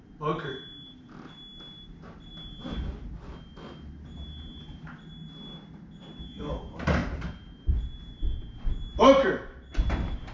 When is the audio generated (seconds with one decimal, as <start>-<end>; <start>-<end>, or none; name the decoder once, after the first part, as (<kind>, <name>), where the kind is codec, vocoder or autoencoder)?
none